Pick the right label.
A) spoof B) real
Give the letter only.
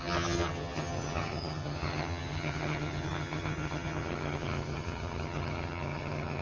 A